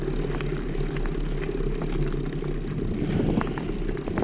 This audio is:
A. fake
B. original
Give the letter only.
B